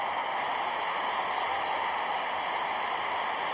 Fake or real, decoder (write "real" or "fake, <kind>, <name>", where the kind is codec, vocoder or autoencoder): real